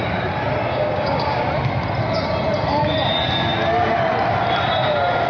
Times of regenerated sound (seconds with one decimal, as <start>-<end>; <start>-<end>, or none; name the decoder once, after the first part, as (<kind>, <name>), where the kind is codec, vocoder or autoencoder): 0.7-1.4 (codec, DAC)